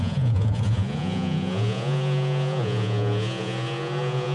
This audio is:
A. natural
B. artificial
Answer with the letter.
B